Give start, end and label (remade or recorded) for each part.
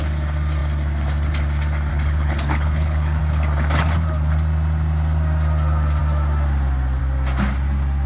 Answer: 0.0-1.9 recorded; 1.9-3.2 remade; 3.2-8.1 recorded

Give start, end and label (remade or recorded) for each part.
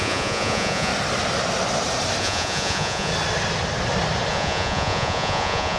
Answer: 0.0-0.9 remade; 0.9-2.2 recorded; 2.2-3.1 remade; 3.1-4.3 recorded; 4.3-5.8 remade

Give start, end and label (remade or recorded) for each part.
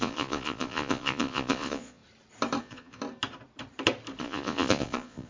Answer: 0.0-2.0 remade; 2.0-2.6 recorded; 2.6-3.0 remade; 3.0-4.2 recorded; 4.2-5.3 remade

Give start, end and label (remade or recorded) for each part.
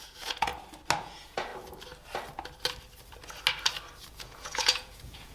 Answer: 0.0-0.5 remade; 0.5-1.0 recorded; 1.0-1.5 remade; 1.5-4.1 recorded; 4.1-5.3 remade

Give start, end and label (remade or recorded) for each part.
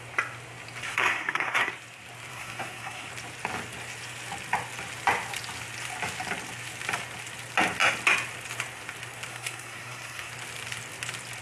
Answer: 0.0-0.8 recorded; 0.8-1.7 remade; 1.7-2.3 recorded; 2.3-3.1 remade; 3.1-9.3 recorded; 9.3-10.3 remade; 10.3-11.4 recorded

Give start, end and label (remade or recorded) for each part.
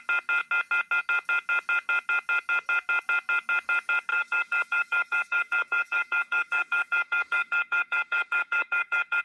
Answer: 0.0-4.1 recorded; 4.1-9.2 remade